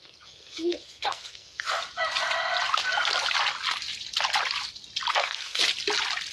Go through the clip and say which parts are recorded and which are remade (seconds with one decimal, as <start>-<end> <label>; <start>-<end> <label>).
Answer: 0.0-1.8 remade; 1.8-5.1 recorded; 5.1-5.6 remade; 5.6-6.3 recorded